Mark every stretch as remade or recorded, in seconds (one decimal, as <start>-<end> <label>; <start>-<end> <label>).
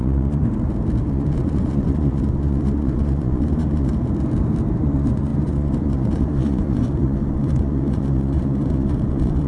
0.0-0.4 remade; 0.4-1.1 recorded; 1.1-3.9 remade; 3.9-4.8 recorded; 4.8-9.5 remade